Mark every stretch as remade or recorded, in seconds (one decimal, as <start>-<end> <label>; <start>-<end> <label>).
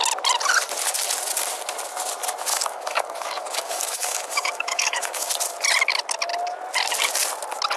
0.0-2.5 recorded; 2.5-5.3 remade; 5.3-7.8 recorded